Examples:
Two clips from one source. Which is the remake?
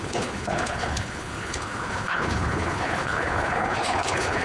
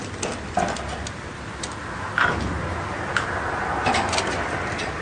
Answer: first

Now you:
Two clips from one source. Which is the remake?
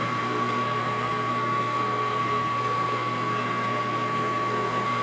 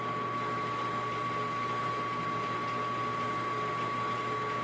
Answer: first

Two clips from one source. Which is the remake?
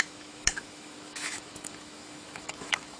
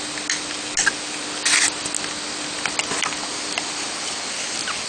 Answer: first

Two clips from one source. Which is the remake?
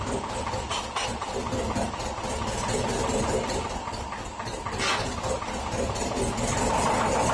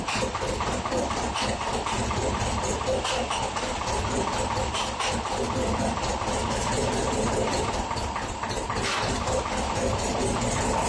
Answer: second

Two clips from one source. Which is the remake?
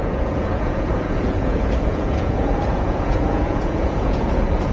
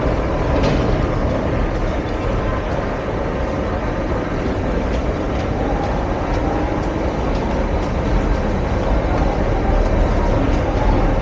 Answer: first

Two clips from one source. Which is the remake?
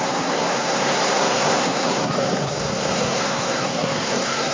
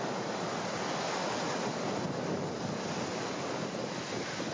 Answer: first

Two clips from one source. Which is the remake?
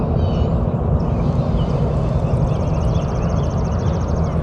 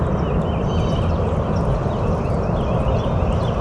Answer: second